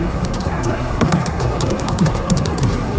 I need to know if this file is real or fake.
fake